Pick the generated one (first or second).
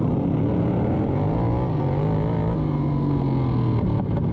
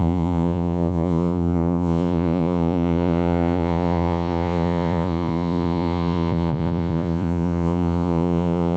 second